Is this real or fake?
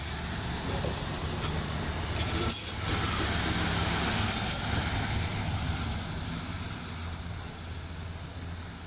real